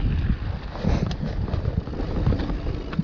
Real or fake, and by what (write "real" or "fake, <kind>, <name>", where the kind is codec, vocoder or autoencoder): real